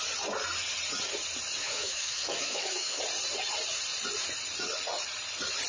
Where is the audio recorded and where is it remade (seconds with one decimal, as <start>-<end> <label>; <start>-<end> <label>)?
0.0-1.6 recorded; 1.6-3.0 remade; 3.0-5.7 recorded

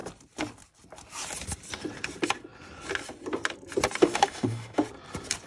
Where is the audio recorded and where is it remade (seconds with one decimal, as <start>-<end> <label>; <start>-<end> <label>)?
0.0-4.0 recorded; 4.0-4.8 remade; 4.8-5.5 recorded

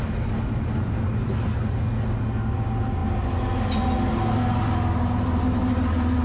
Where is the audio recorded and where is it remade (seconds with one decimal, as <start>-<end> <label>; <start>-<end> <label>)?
0.0-6.2 recorded

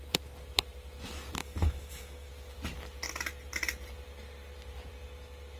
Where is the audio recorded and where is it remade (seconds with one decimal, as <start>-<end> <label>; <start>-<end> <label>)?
0.0-1.4 recorded; 1.4-2.3 remade; 2.3-5.6 recorded